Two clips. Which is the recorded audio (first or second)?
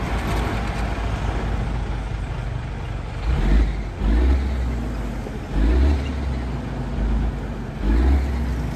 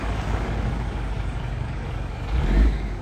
first